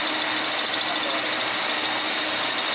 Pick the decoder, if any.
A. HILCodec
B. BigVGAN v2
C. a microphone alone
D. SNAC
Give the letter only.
C